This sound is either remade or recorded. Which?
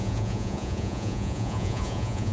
remade